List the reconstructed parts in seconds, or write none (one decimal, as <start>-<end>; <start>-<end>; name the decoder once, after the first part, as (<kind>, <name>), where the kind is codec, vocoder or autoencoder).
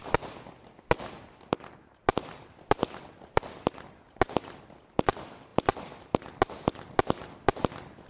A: none